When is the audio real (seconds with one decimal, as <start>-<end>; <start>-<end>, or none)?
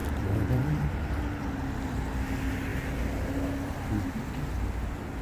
1.2-5.2